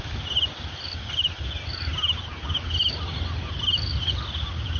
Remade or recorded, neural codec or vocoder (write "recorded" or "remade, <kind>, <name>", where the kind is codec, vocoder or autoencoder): recorded